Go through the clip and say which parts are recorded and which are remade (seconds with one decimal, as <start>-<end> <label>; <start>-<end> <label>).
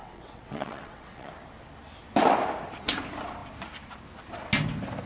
0.0-1.3 remade; 1.3-5.1 recorded